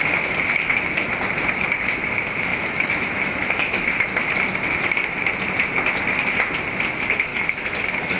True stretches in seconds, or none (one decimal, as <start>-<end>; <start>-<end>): 0.0-2.5; 3.8-7.3